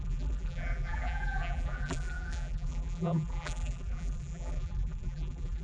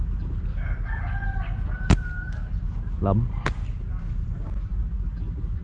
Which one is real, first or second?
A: second